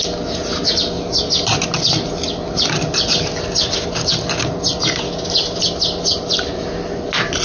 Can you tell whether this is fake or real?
real